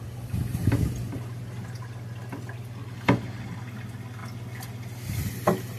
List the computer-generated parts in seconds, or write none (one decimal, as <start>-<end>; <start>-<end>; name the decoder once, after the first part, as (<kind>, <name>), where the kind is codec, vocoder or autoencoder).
none